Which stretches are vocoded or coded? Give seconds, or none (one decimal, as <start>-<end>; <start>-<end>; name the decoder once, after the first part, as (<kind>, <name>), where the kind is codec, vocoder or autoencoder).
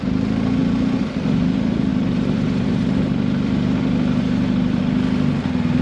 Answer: 1.9-4.8 (vocoder, BigVGAN v2)